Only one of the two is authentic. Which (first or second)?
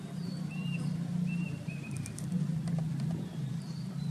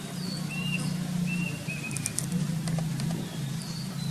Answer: second